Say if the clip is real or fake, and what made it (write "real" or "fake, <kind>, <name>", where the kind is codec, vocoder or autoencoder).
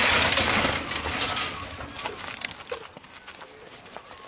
real